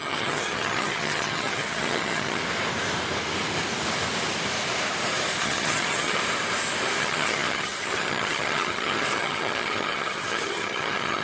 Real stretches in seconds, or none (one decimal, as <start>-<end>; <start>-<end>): 2.4-5.4; 6.2-7.0